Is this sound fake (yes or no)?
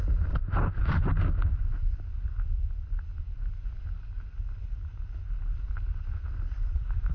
no